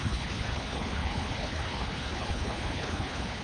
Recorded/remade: remade